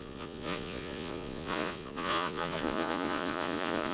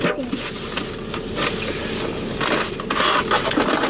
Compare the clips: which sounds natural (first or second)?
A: second